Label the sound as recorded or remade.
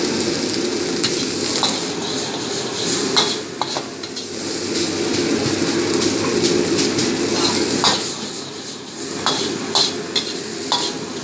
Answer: recorded